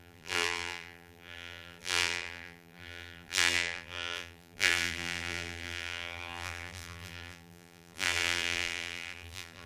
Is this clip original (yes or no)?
no